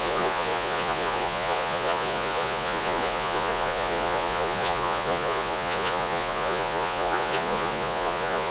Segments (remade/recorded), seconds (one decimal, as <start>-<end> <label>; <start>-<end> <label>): 0.0-8.5 remade